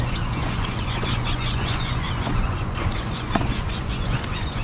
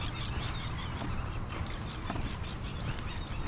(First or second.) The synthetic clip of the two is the first